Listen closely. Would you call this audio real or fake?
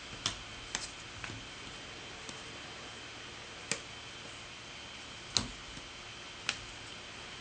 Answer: real